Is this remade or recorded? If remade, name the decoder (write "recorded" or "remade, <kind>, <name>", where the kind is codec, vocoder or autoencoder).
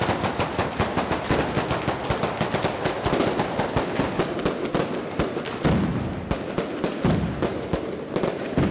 recorded